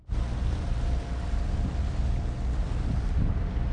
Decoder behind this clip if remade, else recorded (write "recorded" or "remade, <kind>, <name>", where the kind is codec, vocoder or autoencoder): recorded